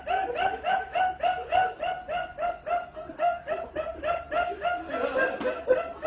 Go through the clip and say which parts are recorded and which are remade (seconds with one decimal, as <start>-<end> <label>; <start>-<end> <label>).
0.0-0.5 recorded; 0.5-1.0 remade; 1.0-6.1 recorded